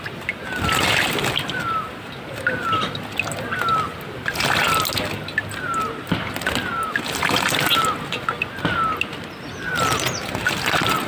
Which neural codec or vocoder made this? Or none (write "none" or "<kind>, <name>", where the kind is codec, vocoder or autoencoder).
none